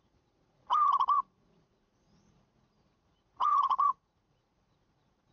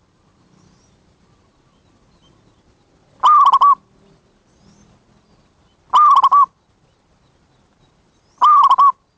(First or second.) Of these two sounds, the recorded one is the second